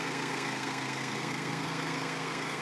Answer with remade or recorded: remade